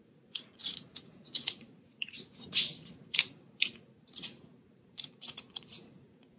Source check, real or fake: fake